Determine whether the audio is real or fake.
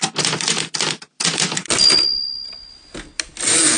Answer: real